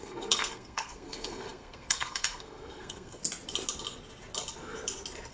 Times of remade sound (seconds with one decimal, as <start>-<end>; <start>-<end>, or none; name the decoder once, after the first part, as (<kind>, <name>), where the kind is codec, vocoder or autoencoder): 0.0-3.2 (codec, SNAC)